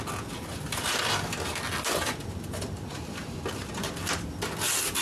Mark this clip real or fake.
real